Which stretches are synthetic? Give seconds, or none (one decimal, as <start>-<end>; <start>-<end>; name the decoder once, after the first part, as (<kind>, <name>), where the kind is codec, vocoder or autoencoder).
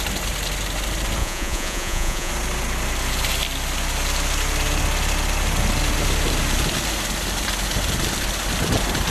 1.2-2.3 (vocoder, Vocos)